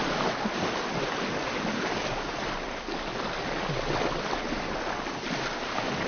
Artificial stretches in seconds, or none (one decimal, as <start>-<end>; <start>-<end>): none